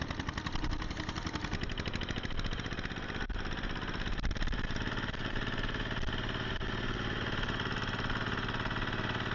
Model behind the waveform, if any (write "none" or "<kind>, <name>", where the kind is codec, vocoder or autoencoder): none